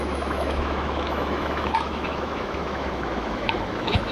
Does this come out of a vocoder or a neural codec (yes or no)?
yes